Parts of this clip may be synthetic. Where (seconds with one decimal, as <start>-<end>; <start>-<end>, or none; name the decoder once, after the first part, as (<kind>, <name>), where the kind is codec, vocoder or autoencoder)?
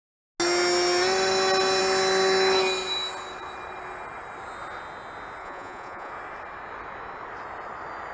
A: 5.4-6.1 (vocoder, Vocos)